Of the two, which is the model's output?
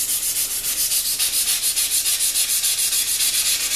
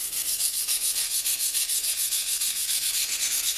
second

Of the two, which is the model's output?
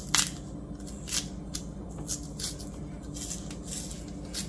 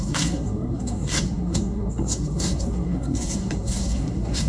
second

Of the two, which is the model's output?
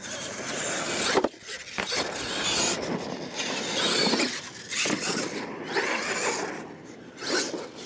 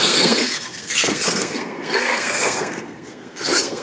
second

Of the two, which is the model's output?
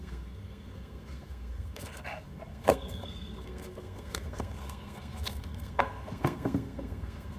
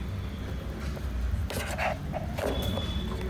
first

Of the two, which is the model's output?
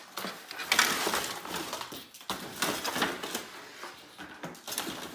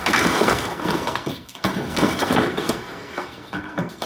second